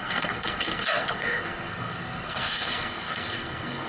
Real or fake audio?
fake